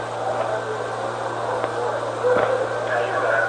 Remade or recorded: recorded